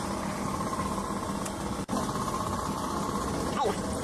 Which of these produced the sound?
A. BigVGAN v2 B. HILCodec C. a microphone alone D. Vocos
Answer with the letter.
C